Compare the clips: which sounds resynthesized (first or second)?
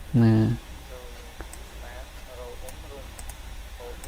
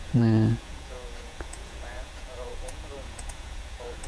second